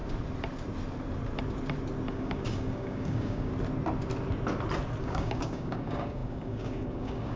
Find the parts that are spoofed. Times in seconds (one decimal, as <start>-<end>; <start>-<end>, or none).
2.1-3.5; 5.0-7.4